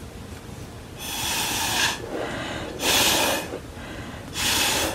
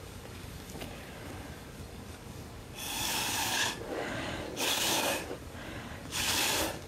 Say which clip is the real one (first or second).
first